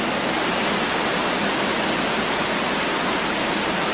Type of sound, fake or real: real